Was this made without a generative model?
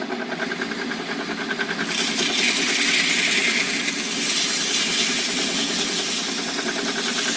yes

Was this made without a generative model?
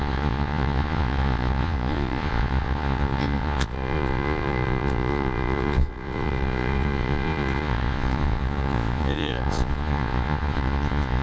no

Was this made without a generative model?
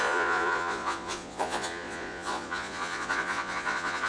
no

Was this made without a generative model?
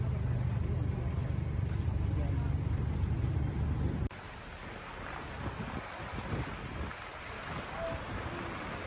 yes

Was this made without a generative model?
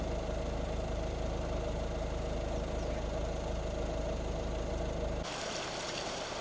yes